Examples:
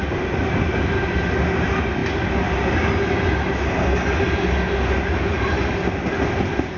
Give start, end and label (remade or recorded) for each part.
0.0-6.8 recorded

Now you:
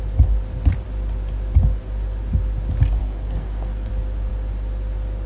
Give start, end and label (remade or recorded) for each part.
0.0-3.0 recorded; 3.0-3.9 remade; 3.9-5.3 recorded

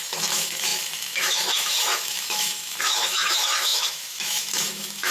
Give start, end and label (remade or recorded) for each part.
0.0-5.1 remade

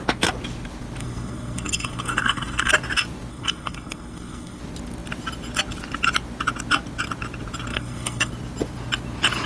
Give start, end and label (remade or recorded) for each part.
0.0-1.0 recorded; 1.0-2.7 remade; 2.7-3.3 recorded; 3.3-4.6 remade; 4.6-7.7 recorded; 7.7-8.3 remade; 8.3-9.5 recorded

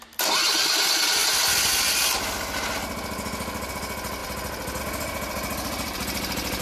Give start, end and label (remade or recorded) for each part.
0.0-6.6 recorded

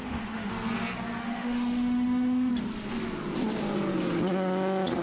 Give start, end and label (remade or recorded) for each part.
0.0-0.5 remade; 0.5-1.2 recorded; 1.2-2.5 remade; 2.5-5.0 recorded